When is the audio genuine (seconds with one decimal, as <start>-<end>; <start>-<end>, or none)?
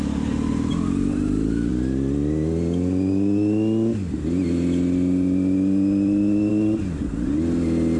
0.0-8.0